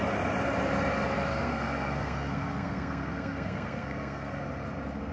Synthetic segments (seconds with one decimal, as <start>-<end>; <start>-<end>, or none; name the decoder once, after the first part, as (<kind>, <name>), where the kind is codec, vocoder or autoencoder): 1.3-4.4 (codec, SNAC)